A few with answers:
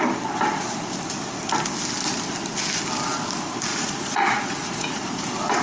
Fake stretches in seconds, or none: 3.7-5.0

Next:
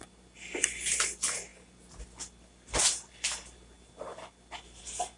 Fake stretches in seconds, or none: none

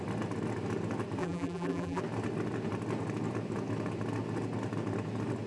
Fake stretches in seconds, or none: 1.2-2.0

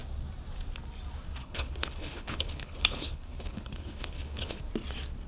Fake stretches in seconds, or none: 1.4-4.6

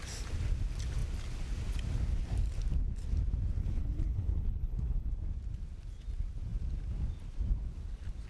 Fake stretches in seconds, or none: 3.6-5.1

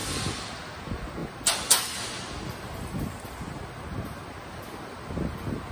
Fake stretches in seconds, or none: 0.0-0.5